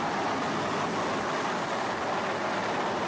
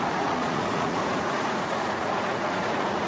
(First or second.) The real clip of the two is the first